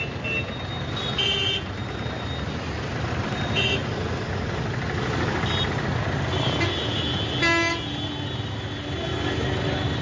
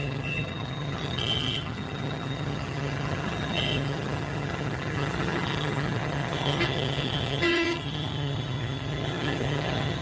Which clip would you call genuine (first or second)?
first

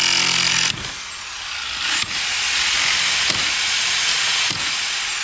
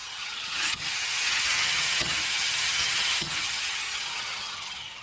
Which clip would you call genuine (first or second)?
first